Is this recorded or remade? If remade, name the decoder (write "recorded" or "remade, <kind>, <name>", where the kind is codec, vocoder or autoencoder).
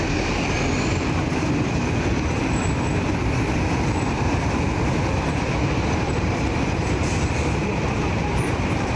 remade, vocoder, BigVGAN v2